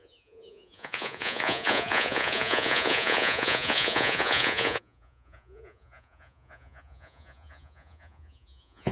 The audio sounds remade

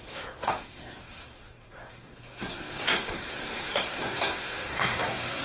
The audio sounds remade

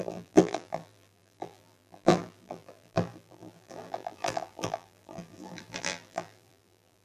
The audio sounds remade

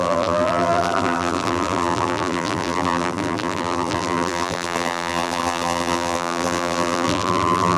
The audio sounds remade